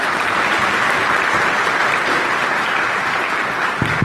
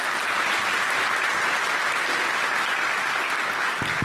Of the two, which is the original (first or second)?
second